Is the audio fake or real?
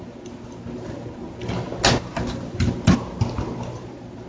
real